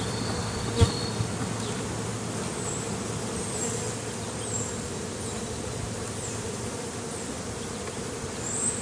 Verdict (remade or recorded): recorded